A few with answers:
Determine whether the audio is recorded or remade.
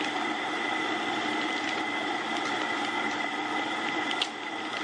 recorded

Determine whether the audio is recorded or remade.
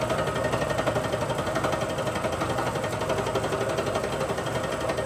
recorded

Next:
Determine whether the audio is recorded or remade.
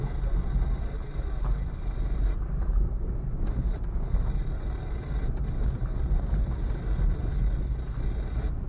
recorded